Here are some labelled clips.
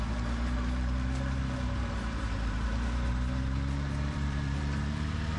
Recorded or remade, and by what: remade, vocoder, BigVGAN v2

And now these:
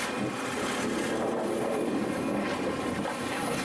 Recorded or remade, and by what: recorded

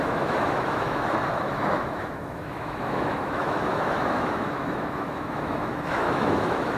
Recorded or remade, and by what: remade, autoencoder, DAC-VAE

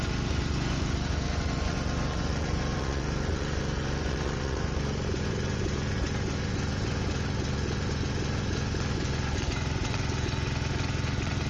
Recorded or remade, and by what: remade, vocoder, Vocos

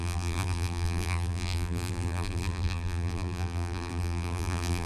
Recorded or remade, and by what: remade, vocoder, BigVGAN v2